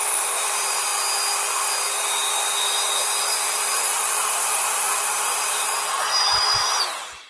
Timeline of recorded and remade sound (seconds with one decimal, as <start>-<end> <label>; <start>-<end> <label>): 0.0-0.9 remade; 0.9-3.2 recorded; 3.2-7.3 remade